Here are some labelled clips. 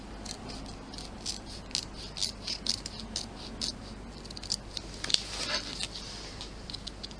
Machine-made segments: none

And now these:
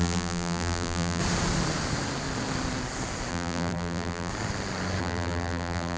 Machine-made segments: 0.0-1.2 (vocoder, BigVGAN v2); 3.3-4.3; 5.0-6.0

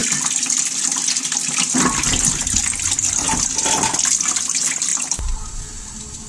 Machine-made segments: none

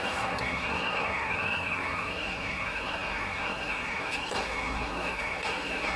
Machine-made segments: 0.0-6.0 (codec, SNAC)

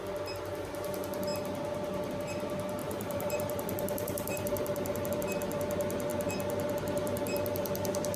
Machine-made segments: 2.8-5.1 (vocoder, BigVGAN v2)